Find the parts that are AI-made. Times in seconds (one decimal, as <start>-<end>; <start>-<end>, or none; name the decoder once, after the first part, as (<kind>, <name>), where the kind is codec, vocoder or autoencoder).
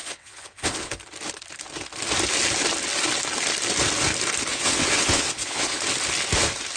0.0-0.9 (vocoder, WaveNeXt); 4.5-5.8